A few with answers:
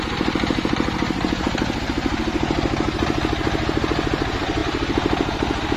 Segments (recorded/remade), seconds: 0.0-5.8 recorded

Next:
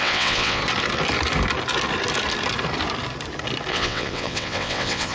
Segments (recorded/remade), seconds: 0.0-0.6 remade; 0.6-3.7 recorded; 3.7-5.1 remade